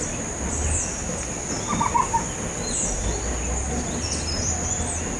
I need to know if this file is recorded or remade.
recorded